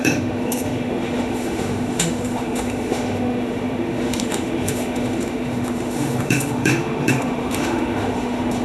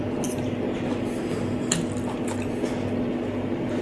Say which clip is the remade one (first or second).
first